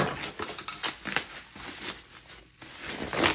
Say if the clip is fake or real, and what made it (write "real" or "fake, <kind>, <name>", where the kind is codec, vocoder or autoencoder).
real